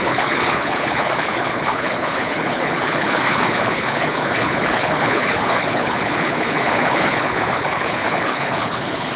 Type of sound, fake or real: fake